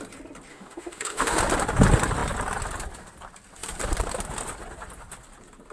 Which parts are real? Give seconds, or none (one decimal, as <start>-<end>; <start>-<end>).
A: 0.0-0.5; 1.4-5.7